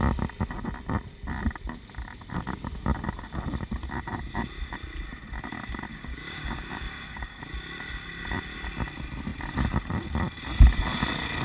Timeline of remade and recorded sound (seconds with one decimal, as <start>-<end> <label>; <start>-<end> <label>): 0.0-5.9 recorded; 5.9-7.4 remade; 7.4-11.4 recorded